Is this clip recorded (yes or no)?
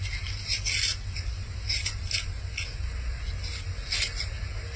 yes